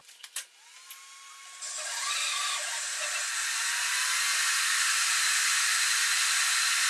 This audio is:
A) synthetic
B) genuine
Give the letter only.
B